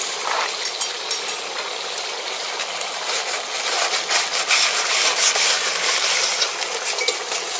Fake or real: real